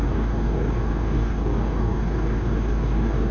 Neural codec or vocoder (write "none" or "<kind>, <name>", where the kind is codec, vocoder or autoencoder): codec, DAC